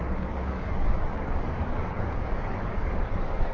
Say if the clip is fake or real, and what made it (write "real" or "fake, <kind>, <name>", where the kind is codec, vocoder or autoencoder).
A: fake, codec, DAC